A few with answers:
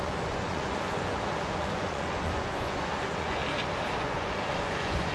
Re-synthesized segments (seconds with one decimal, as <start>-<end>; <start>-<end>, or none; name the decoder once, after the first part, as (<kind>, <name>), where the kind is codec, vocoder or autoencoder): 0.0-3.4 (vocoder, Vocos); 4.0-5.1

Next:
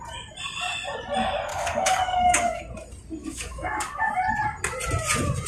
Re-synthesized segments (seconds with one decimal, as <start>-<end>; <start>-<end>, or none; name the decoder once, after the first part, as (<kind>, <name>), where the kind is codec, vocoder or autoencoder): 1.5-2.6 (codec, DAC); 3.2-4.1

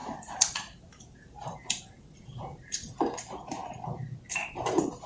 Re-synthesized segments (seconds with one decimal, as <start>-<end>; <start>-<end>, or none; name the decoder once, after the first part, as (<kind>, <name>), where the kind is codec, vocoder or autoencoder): 0.0-3.6 (vocoder, BigVGAN v2); 4.3-5.1

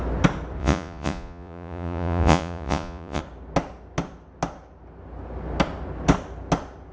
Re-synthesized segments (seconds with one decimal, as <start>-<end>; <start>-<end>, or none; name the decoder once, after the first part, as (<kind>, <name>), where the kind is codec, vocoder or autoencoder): 0.6-3.2 (vocoder, Vocos)